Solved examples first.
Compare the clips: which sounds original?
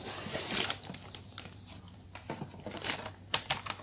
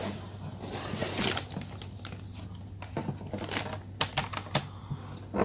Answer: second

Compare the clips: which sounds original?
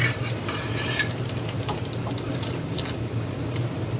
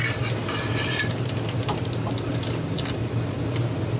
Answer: second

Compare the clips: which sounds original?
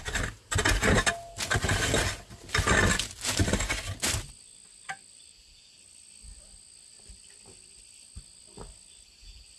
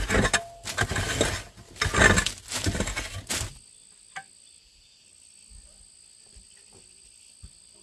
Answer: second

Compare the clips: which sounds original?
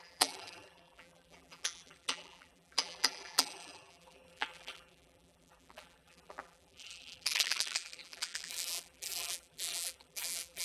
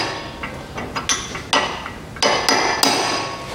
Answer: second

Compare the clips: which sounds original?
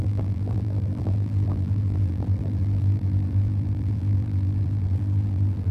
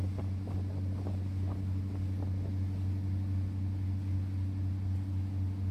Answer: second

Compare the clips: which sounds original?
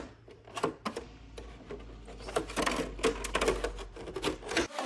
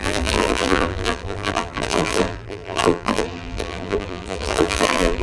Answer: first